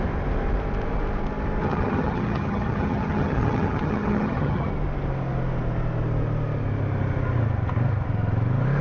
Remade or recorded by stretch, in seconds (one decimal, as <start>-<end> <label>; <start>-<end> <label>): 0.0-1.6 recorded; 1.6-4.7 remade; 4.7-8.8 recorded